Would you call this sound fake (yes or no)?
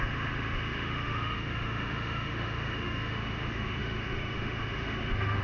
yes